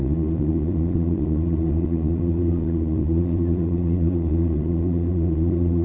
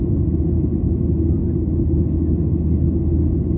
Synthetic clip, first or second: first